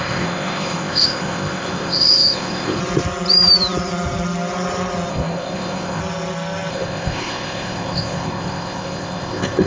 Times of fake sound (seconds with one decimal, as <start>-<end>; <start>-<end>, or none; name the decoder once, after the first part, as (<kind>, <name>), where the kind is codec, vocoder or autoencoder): 0.0-2.8 (codec, ZipCodec); 5.1-6.0; 6.7-9.7